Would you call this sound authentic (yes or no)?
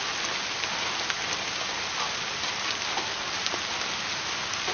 yes